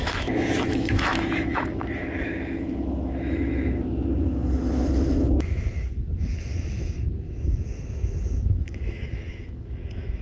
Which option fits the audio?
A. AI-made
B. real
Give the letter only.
A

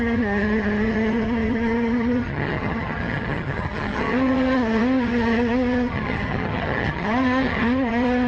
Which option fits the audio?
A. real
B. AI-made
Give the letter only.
B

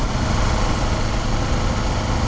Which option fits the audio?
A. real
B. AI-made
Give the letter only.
A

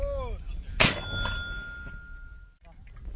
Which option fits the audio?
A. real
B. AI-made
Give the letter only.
A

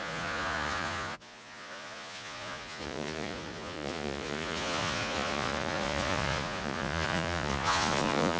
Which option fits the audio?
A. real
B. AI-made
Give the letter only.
B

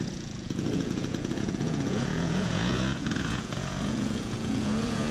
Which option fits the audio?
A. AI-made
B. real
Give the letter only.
A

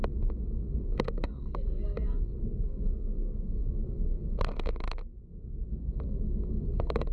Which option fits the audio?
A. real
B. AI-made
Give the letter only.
B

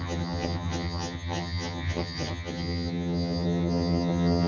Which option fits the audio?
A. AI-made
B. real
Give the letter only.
A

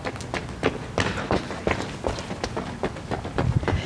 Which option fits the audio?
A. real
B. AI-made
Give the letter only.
A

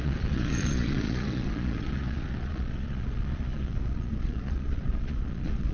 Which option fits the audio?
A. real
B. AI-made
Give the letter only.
B